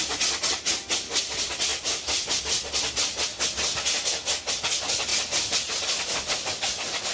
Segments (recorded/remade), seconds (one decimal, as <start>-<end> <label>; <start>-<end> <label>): 0.0-1.7 recorded; 1.7-2.4 remade; 2.4-7.1 recorded